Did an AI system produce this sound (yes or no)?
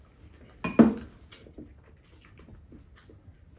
no